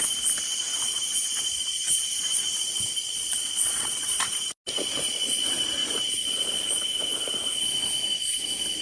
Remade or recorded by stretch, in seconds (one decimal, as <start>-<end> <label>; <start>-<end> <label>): 0.0-3.0 recorded; 3.0-4.2 remade; 4.2-8.8 recorded